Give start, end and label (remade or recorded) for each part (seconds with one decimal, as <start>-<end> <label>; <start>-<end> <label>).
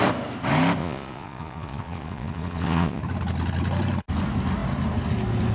0.0-0.8 recorded; 0.8-3.0 remade; 3.0-5.5 recorded